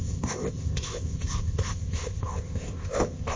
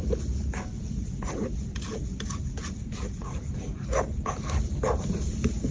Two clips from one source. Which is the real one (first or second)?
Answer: second